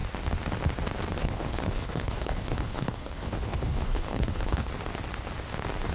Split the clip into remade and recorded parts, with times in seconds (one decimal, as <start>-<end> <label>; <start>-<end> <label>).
0.0-1.2 recorded; 1.2-4.7 remade; 4.7-5.9 recorded